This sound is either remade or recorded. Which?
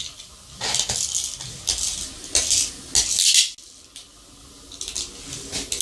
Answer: recorded